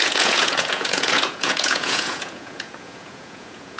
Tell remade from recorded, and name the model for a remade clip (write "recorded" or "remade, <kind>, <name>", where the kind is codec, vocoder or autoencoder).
remade, vocoder, Vocos